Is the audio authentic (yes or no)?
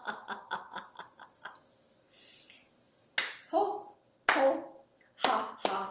yes